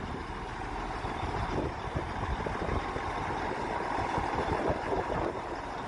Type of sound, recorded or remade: recorded